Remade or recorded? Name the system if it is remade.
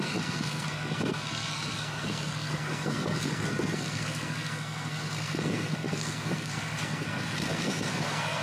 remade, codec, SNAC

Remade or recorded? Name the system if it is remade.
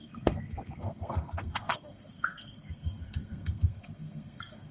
remade, codec, SNAC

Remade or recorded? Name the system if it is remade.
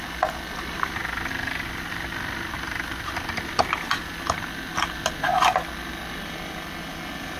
recorded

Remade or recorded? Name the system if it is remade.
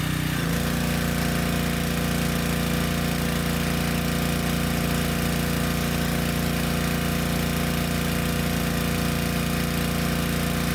recorded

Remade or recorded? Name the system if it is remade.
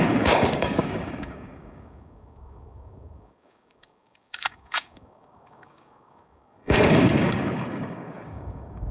remade, codec, DAC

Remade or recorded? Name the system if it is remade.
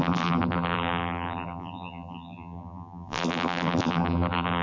remade, vocoder, BigVGAN v2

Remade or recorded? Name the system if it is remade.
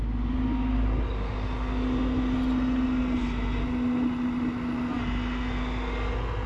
recorded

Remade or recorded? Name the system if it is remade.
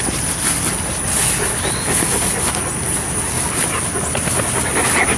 recorded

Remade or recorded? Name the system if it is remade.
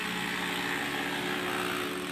recorded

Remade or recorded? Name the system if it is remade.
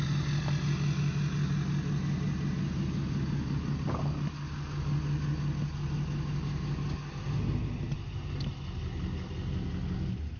recorded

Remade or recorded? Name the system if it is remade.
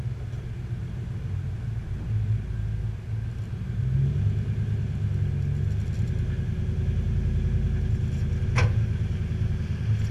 recorded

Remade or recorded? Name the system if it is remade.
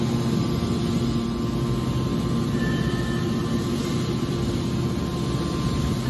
recorded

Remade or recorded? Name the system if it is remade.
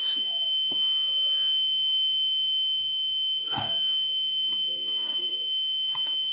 remade, autoencoder, DAC-VAE